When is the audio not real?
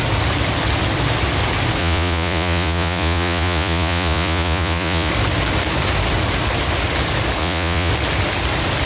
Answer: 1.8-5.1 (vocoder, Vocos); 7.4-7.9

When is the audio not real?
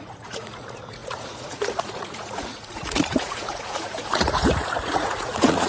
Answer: 0.0-5.7 (vocoder, Vocos)